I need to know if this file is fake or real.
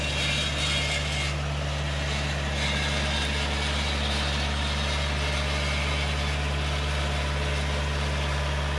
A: real